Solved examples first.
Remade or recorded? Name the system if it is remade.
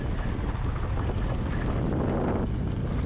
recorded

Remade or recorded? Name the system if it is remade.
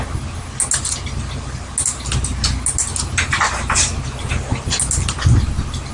recorded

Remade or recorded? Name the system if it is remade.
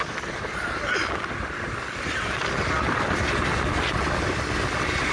recorded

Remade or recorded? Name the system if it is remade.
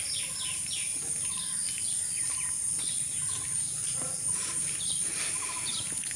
remade, vocoder, BigVGAN v2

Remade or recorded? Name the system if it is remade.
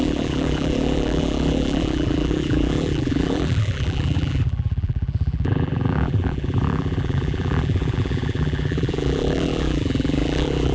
remade, vocoder, BigVGAN v2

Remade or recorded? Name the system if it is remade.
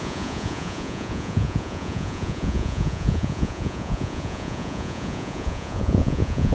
remade, vocoder, Vocos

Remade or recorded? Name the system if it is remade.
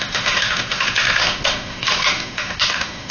remade, autoencoder, DAC-VAE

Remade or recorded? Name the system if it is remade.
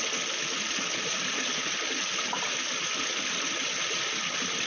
recorded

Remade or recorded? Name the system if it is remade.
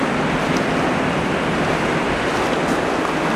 recorded